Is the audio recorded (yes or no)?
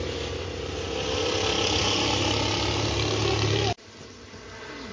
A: yes